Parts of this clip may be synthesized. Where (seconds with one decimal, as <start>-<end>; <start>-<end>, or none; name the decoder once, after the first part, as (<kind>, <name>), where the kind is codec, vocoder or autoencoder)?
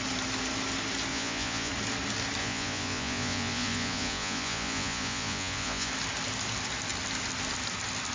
1.1-1.7 (vocoder, Vocos); 2.4-5.9